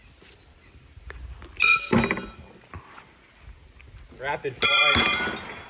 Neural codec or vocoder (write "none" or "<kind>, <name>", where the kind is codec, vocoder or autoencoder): none